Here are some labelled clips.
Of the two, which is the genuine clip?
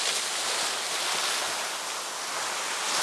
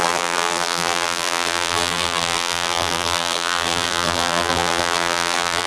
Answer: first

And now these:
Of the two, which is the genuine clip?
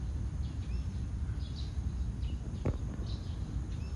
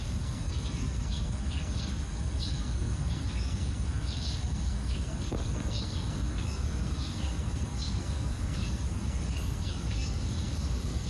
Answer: first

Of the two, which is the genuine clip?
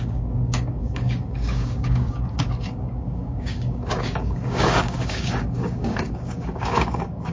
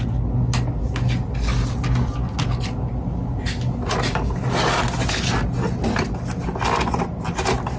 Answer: second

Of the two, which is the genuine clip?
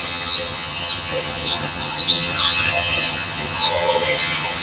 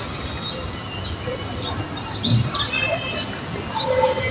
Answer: second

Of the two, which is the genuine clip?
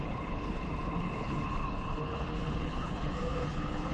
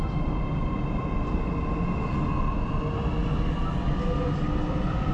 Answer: second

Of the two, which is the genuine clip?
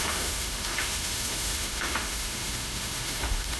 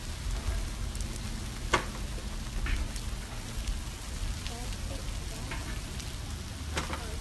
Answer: second